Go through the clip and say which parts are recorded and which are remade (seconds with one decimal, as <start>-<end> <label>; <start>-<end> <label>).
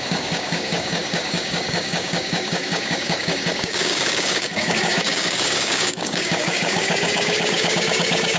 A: 0.0-8.4 remade